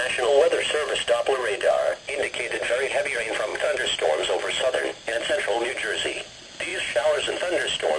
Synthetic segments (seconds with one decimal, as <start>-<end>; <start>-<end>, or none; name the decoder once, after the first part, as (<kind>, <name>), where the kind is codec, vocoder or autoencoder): 6.7-7.3 (vocoder, BigVGAN v2)